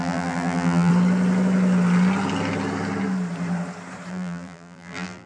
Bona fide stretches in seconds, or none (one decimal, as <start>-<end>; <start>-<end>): 0.9-4.1